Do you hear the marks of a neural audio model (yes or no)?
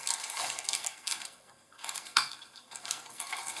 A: yes